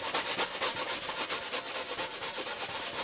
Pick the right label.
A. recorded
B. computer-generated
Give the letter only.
A